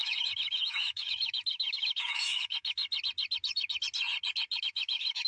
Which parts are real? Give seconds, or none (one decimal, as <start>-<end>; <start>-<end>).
2.8-4.6